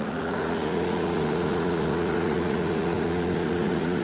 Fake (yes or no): yes